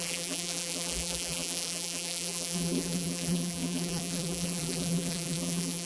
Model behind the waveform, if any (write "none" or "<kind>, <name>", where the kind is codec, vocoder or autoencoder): vocoder, BigVGAN v2